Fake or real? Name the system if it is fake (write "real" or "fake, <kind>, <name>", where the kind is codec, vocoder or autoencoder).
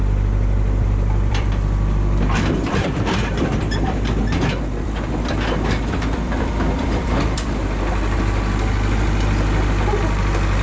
fake, vocoder, BigVGAN v2